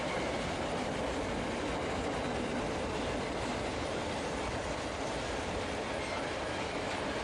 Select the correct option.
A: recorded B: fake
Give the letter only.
A